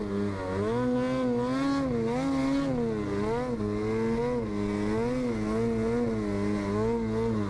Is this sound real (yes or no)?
yes